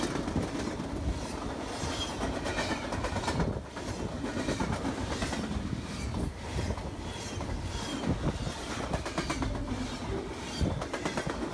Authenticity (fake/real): real